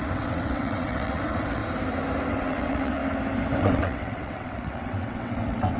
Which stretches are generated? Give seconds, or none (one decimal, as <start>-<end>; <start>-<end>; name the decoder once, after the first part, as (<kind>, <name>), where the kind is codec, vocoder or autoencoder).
0.0-1.6 (vocoder, WaveNeXt); 2.3-3.0; 3.6-5.8